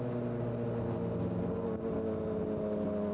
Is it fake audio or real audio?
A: real